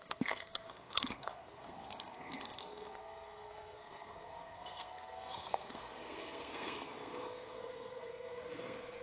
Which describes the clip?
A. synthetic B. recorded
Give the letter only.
A